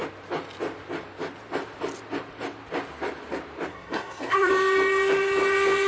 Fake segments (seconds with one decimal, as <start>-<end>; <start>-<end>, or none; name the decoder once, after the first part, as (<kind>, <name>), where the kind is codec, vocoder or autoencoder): 3.7-4.5 (codec, SNAC)